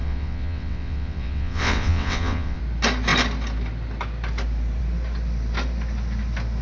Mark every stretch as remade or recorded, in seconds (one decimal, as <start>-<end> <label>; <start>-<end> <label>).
0.0-2.6 remade; 2.6-6.6 recorded